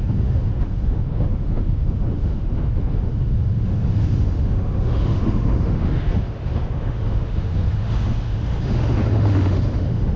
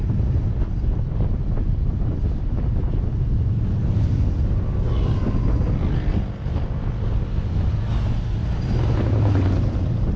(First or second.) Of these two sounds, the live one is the second